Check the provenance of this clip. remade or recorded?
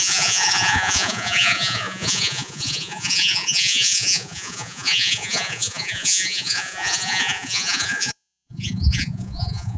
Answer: remade